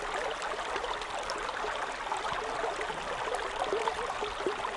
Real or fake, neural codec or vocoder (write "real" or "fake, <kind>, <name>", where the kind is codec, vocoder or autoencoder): real